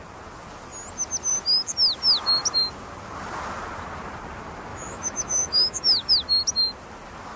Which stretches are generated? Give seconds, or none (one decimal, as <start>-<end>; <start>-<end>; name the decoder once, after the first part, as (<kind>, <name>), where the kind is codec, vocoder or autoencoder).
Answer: 4.7-6.1 (autoencoder, DAC-VAE)